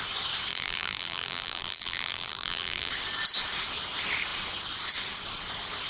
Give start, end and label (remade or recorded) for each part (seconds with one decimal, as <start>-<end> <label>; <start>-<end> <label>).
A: 0.0-0.5 recorded; 0.5-2.9 remade; 2.9-5.9 recorded